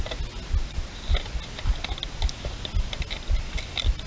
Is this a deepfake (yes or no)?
no